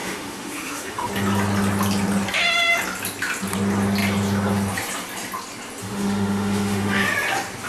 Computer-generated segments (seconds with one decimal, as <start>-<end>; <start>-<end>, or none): 0.0-1.1; 5.8-7.0